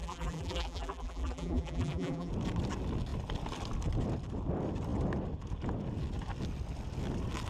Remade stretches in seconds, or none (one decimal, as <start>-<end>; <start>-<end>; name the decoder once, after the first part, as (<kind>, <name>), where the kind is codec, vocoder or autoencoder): 0.0-2.3 (vocoder, BigVGAN v2)